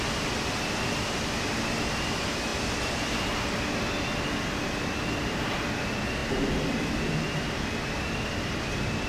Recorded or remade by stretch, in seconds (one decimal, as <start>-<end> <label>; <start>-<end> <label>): 0.0-9.1 recorded